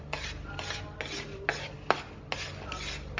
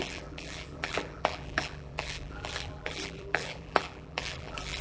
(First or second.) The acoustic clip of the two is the first